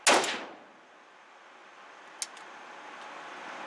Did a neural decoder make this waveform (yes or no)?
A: no